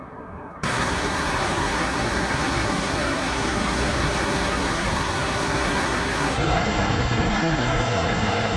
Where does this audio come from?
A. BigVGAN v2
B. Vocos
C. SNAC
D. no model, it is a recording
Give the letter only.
C